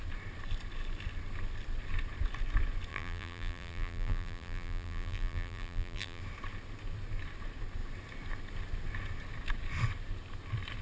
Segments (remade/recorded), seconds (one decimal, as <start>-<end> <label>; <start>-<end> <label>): 0.0-2.9 recorded; 2.9-6.2 remade; 6.2-10.8 recorded